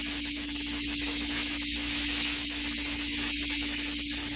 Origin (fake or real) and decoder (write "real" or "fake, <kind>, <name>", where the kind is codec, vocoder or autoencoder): fake, autoencoder, DAC-VAE